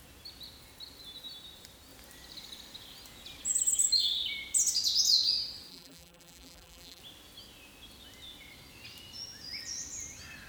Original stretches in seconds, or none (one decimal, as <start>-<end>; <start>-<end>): 0.0-5.7; 7.0-10.5